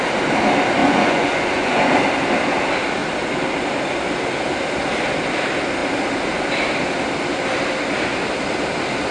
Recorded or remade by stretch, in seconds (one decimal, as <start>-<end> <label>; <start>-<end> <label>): 0.0-0.8 recorded; 0.8-1.9 remade; 1.9-9.1 recorded

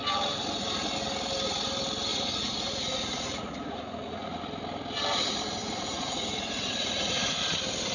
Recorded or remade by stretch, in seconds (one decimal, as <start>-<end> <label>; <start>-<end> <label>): 0.0-2.1 recorded; 2.1-4.4 remade; 4.4-5.6 recorded; 5.6-7.4 remade; 7.4-7.9 recorded

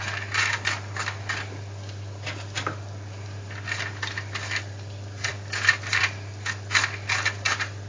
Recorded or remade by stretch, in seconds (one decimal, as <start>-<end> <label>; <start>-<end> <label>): 0.0-7.9 recorded

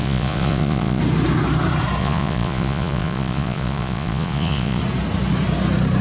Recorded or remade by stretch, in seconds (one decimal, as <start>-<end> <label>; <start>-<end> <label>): 0.0-1.0 remade; 1.0-2.0 recorded; 2.0-4.8 remade; 4.8-6.0 recorded

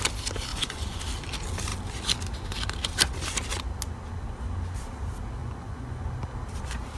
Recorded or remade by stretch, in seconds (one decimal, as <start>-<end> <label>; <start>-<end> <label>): 0.0-0.5 recorded; 0.5-1.0 remade; 1.0-5.4 recorded; 5.4-6.1 remade; 6.1-7.0 recorded

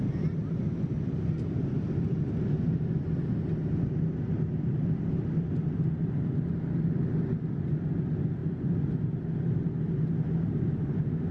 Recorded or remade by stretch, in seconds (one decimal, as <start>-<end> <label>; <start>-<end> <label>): 0.0-11.3 recorded

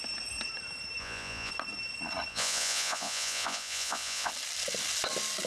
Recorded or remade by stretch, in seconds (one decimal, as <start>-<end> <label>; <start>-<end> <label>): 0.0-1.0 recorded; 1.0-1.5 remade; 1.5-2.3 recorded; 2.3-4.3 remade; 4.3-5.5 recorded